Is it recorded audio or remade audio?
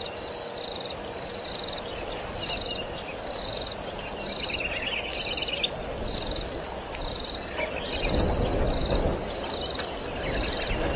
recorded